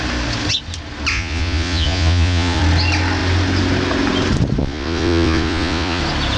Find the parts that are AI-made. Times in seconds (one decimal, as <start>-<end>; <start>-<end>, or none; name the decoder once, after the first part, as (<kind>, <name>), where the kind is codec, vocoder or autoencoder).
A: 1.1-2.6 (vocoder, Vocos); 4.6-6.0